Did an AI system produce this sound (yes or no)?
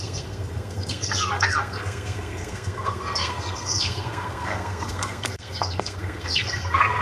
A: yes